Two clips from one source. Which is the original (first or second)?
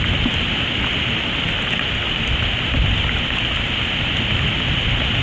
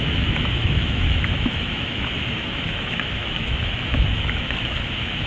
first